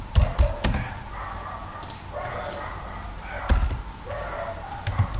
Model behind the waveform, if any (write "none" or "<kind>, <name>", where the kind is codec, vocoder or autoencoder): none